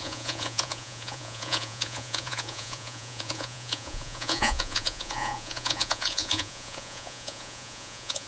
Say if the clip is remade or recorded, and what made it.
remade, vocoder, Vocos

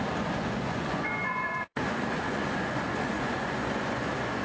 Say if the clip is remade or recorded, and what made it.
remade, vocoder, Vocos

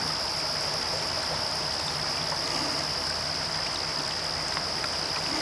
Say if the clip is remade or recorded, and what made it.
recorded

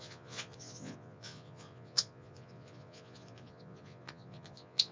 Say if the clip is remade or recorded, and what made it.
remade, vocoder, Vocos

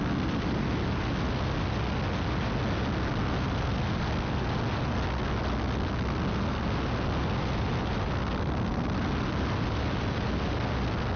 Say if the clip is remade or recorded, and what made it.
recorded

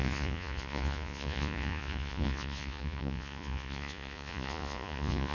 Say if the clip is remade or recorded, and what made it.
remade, vocoder, Vocos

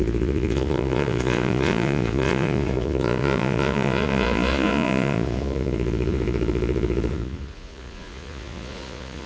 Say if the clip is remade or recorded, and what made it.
remade, vocoder, Vocos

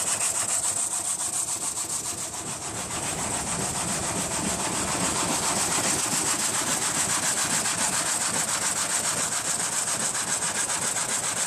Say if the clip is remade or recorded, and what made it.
recorded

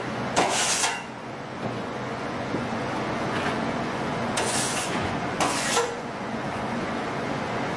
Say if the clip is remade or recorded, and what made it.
remade, vocoder, Vocos